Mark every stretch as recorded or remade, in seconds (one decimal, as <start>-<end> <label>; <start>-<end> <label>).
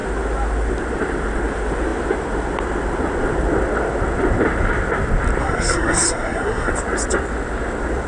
0.0-5.4 recorded; 5.4-6.7 remade; 6.7-8.1 recorded